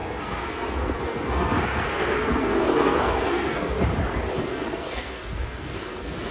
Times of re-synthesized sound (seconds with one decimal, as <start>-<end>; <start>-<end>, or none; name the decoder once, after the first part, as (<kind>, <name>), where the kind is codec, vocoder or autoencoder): 0.0-3.8 (codec, SNAC); 4.4-6.3